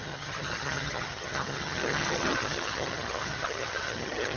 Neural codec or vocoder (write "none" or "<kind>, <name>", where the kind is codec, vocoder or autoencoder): vocoder, HiFi-GAN